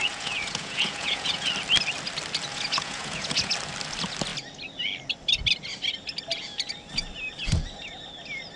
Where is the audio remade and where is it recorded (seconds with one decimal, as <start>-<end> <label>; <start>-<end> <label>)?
0.0-1.5 remade; 1.5-2.5 recorded; 2.5-3.5 remade; 3.5-8.6 recorded